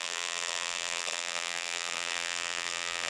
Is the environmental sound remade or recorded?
remade